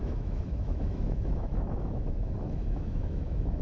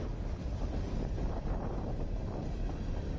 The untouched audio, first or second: second